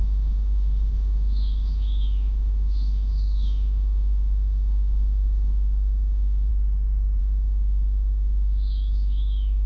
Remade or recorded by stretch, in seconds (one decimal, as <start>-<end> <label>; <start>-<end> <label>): 0.0-6.5 remade; 6.5-7.2 recorded; 7.2-9.7 remade